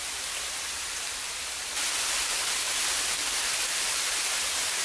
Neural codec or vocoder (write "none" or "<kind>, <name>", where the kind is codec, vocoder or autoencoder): none